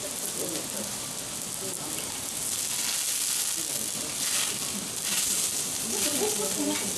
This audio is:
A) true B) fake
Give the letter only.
A